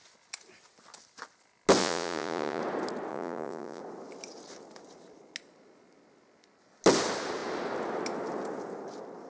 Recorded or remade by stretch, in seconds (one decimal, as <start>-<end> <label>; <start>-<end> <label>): 0.0-1.8 recorded; 1.8-2.6 remade; 2.6-3.1 recorded; 3.1-3.8 remade; 3.8-9.3 recorded